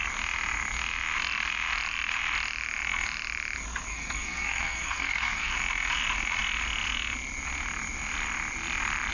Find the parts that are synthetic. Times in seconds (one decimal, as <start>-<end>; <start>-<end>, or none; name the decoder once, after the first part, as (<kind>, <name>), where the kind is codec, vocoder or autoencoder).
3.9-5.5 (codec, SNAC)

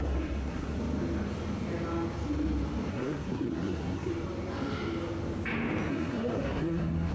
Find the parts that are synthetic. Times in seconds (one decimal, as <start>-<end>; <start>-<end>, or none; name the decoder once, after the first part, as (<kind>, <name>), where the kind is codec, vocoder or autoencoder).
0.0-0.8 (codec, SNAC); 2.9-4.1; 5.9-7.1

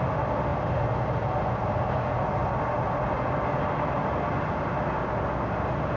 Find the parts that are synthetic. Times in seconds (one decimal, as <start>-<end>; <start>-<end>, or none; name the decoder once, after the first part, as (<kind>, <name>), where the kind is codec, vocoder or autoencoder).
none

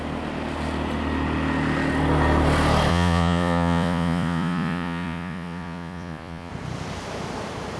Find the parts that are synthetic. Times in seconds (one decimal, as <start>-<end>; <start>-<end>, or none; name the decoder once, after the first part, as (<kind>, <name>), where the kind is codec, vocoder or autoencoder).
2.9-6.5 (vocoder, Vocos)